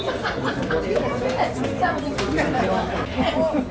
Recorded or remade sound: recorded